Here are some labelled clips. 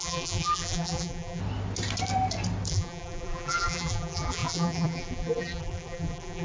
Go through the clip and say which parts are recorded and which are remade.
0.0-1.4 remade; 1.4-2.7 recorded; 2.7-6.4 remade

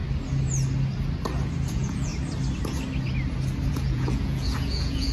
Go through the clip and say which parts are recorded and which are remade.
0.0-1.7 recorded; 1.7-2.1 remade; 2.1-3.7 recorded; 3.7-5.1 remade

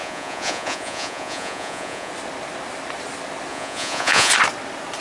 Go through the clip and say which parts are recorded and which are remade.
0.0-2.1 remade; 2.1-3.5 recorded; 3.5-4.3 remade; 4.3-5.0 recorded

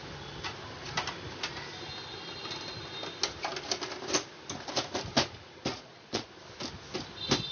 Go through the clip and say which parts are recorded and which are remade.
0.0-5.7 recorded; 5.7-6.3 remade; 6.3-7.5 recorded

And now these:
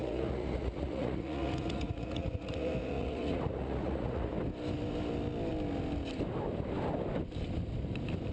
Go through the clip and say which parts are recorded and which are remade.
0.0-4.3 remade; 4.3-8.3 recorded

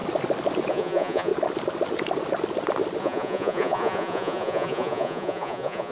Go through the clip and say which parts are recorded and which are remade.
0.0-0.7 recorded; 0.7-1.3 remade; 1.3-3.0 recorded; 3.0-5.9 remade